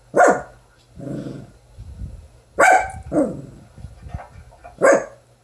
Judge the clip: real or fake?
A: real